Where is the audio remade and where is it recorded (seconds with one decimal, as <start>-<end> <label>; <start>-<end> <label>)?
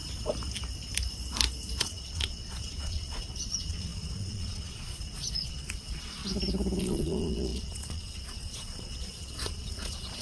0.0-1.8 recorded; 1.8-6.2 remade; 6.2-6.8 recorded; 6.8-10.2 remade